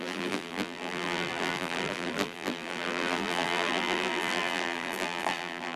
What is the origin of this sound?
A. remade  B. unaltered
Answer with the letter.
A